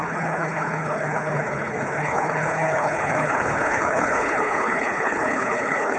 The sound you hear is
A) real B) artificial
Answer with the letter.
B